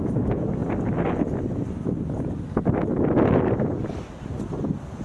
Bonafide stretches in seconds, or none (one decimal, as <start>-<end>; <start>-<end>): 0.0-5.0